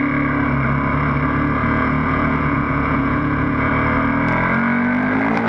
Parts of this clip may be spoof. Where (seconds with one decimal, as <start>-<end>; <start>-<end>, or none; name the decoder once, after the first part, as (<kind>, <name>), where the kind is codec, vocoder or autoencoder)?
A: 1.6-3.7 (vocoder, Vocos)